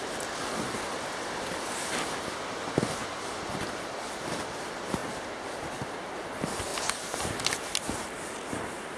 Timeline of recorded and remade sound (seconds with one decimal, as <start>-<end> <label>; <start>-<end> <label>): 0.0-3.0 recorded; 3.0-4.4 remade; 4.4-9.0 recorded